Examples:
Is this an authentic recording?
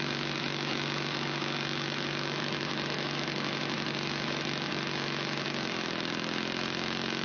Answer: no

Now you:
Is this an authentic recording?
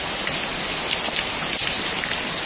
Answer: yes